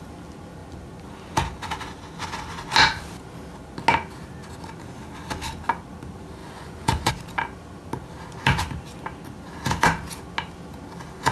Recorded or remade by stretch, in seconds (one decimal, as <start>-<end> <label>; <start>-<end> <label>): 0.0-6.4 recorded; 6.4-7.1 remade; 7.1-11.3 recorded